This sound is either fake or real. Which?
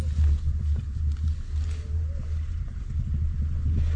real